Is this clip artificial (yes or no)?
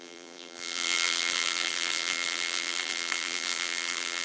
yes